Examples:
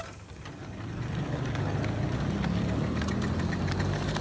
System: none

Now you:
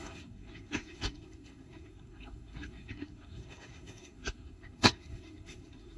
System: codec, SNAC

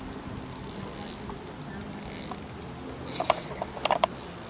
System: none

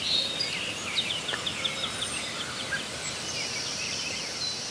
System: none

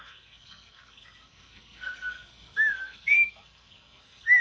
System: codec, SNAC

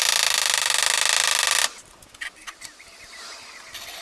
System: none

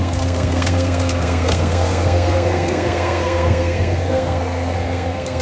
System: codec, SNAC